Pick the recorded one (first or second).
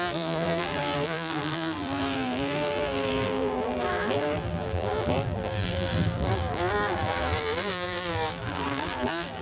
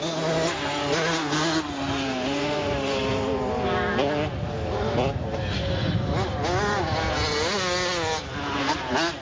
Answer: second